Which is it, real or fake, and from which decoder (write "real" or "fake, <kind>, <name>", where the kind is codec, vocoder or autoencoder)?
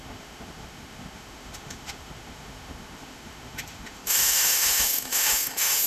fake, autoencoder, DAC-VAE